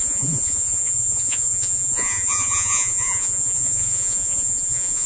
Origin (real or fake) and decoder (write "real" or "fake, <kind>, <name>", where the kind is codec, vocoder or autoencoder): fake, vocoder, Vocos